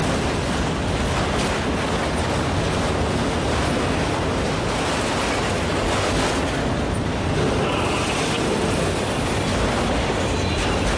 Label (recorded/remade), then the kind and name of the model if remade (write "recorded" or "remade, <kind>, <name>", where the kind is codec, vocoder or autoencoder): recorded